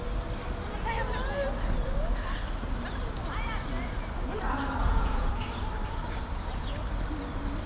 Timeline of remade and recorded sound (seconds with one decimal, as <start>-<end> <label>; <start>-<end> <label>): 0.0-4.8 recorded; 4.8-5.3 remade; 5.3-7.7 recorded